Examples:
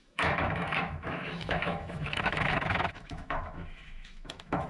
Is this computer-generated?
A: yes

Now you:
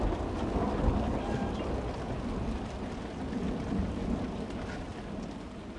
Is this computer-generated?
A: no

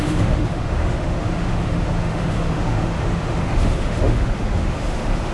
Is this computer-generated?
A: yes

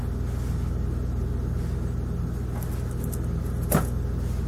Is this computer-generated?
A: no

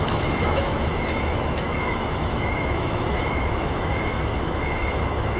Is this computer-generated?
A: yes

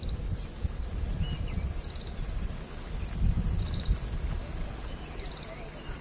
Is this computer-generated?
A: no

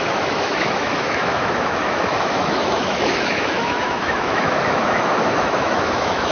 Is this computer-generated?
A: yes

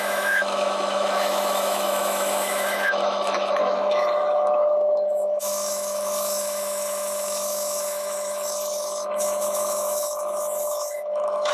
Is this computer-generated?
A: yes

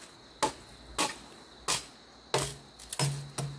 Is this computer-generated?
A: no